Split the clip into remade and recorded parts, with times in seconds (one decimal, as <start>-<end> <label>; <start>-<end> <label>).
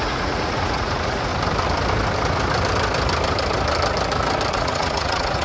0.0-1.3 remade; 1.3-4.5 recorded; 4.5-5.4 remade